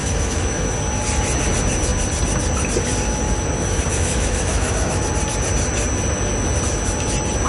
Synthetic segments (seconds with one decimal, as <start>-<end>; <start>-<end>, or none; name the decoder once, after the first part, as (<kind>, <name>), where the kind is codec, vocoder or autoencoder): 0.0-0.6 (autoencoder, DAC-VAE); 3.9-5.0

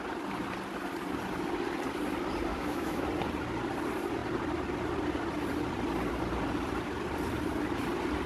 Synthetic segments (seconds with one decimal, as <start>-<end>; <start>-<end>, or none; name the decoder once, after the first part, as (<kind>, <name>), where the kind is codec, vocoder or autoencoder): 2.5-3.1 (autoencoder, DAC-VAE)

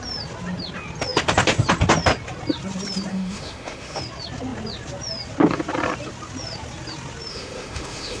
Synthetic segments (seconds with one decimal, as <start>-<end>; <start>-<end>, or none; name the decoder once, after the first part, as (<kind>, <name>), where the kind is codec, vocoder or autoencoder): 3.1-4.0 (autoencoder, DAC-VAE); 7.3-8.2